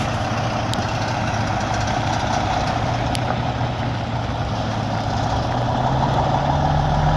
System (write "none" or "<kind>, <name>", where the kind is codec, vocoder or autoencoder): none